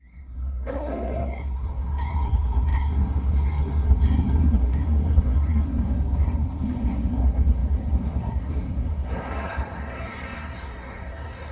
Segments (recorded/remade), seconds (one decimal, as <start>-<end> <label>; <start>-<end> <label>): 0.0-11.5 remade